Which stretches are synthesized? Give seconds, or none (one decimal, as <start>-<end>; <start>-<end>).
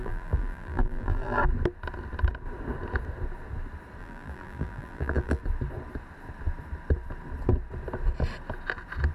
0.0-1.4; 4.0-5.4